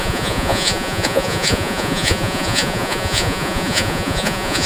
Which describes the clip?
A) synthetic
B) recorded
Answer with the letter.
A